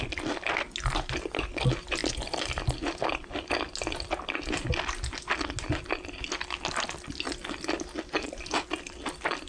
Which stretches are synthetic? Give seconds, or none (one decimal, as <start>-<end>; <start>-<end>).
none